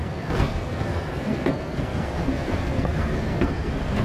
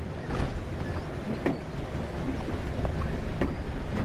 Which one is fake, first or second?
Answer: first